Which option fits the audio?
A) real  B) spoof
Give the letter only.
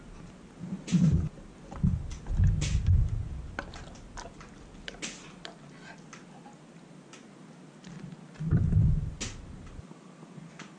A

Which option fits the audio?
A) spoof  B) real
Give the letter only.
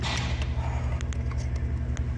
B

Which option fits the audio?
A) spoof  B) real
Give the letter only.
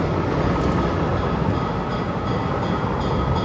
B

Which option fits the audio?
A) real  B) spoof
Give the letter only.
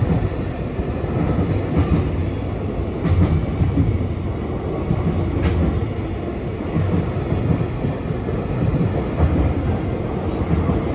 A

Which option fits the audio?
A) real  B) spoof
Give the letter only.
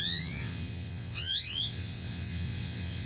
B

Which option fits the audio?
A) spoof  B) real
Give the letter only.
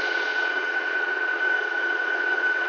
A